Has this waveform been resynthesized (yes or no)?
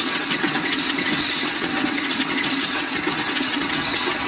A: yes